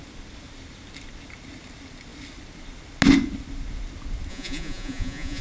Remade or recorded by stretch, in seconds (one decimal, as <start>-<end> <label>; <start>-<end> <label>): 0.0-4.3 recorded; 4.3-5.4 remade